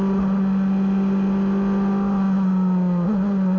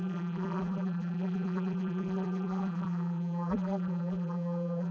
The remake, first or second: second